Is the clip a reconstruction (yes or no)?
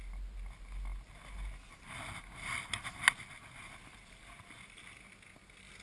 no